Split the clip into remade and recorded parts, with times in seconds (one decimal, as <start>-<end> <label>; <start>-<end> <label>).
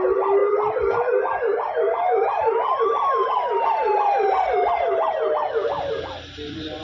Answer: 0.0-5.6 recorded; 5.6-6.8 remade